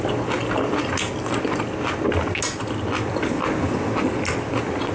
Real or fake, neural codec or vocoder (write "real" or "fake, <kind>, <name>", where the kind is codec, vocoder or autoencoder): real